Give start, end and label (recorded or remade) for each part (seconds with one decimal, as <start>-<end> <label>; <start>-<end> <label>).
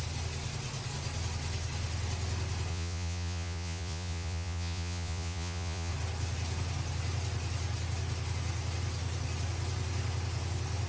0.0-2.7 recorded; 2.7-5.9 remade; 5.9-10.9 recorded